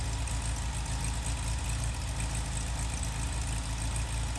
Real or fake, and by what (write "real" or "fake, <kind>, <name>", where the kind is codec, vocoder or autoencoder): real